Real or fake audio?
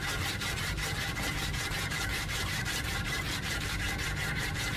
fake